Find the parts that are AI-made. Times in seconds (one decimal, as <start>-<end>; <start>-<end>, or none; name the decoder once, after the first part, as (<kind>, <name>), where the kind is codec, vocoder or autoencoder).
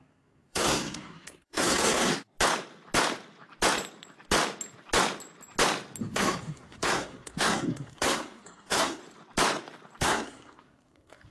0.0-2.1 (codec, SNAC); 6.0-9.0; 10.0-11.3